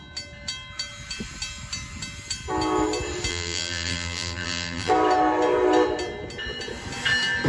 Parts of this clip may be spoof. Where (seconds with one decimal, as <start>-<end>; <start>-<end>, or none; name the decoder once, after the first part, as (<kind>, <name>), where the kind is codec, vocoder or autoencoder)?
3.3-4.9 (vocoder, BigVGAN v2)